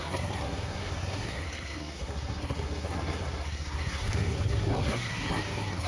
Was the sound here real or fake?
fake